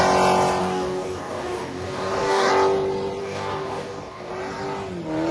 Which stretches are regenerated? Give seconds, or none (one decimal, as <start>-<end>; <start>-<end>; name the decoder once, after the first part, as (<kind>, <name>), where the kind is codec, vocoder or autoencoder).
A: 0.6-2.5 (codec, DAC); 3.2-4.3